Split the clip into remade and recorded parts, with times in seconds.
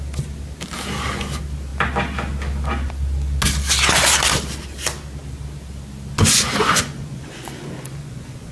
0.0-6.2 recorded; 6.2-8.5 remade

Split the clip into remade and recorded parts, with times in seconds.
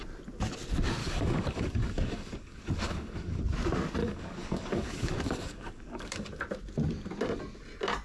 0.0-1.0 recorded; 1.0-3.4 remade; 3.4-4.0 recorded; 4.0-6.4 remade; 6.4-8.0 recorded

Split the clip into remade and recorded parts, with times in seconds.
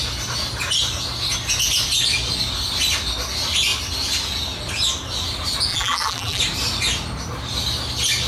0.0-5.7 recorded; 5.7-6.4 remade; 6.4-8.3 recorded